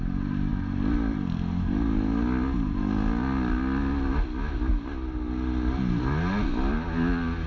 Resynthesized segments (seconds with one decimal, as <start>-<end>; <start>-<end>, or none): none